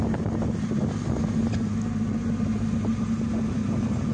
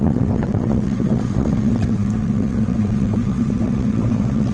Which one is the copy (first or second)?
second